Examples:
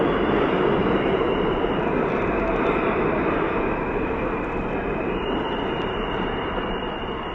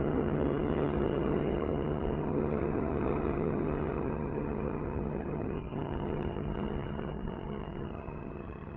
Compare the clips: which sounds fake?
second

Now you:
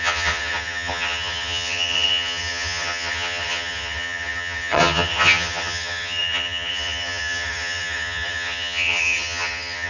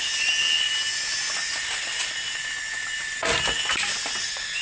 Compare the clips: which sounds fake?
first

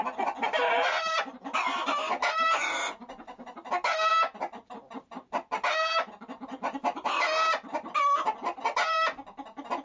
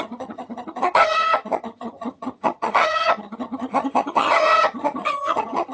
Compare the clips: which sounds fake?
second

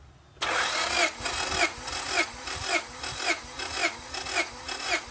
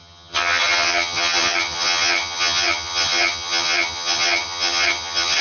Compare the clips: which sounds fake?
second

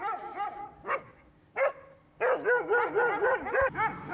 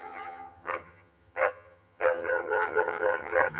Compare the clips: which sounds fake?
second